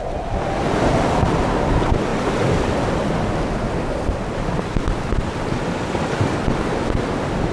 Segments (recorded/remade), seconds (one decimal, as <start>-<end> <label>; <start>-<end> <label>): 0.0-2.1 recorded; 2.1-6.6 remade; 6.6-7.5 recorded